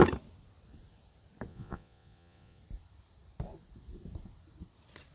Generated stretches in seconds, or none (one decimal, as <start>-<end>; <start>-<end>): 1.5-2.6